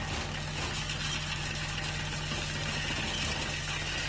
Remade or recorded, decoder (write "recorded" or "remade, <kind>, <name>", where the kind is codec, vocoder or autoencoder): recorded